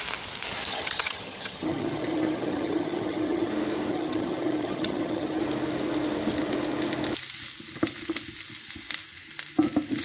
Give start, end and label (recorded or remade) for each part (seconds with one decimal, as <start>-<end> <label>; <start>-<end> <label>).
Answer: 0.0-0.7 recorded; 0.7-3.5 remade; 3.5-3.9 recorded; 3.9-5.4 remade; 5.4-10.0 recorded